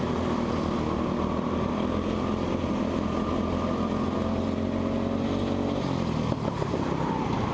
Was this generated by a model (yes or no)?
no